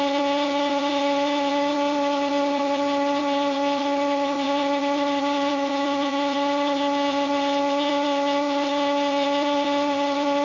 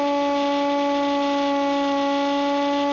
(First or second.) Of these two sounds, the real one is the second